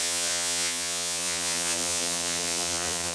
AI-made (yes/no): yes